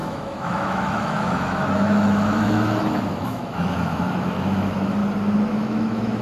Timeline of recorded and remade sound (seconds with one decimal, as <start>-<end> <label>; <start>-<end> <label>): 0.0-5.0 remade; 5.0-5.5 recorded; 5.5-6.2 remade